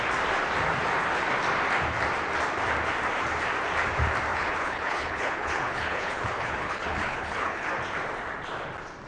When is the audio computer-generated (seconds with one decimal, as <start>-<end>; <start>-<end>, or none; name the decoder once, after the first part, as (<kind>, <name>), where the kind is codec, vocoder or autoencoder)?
4.3-7.7 (codec, HILCodec)